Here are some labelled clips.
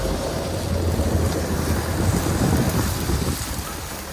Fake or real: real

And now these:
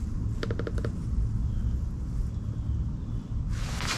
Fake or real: real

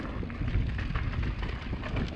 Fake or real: real